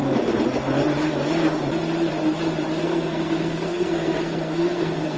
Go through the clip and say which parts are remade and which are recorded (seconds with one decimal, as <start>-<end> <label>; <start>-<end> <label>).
0.0-2.8 recorded; 2.8-5.2 remade